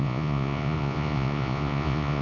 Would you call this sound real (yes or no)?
no